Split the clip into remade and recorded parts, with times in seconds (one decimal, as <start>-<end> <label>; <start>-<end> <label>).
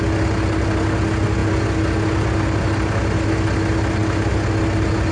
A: 0.0-5.1 recorded